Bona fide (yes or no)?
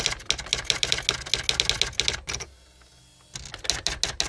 yes